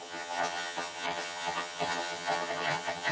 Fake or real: fake